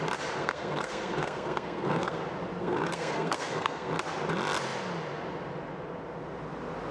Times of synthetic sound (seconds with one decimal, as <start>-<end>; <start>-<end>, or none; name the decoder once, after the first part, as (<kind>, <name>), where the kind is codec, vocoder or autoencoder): 0.4-2.2 (codec, SNAC); 2.6-3.9